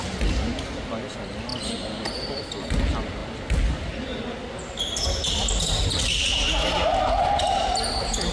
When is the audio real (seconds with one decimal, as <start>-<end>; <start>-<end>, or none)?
0.0-1.5; 2.4-8.3